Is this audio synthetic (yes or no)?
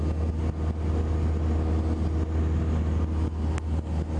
no